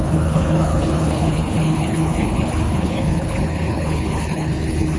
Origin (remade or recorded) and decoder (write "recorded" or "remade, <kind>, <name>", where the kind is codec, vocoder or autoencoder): remade, codec, HILCodec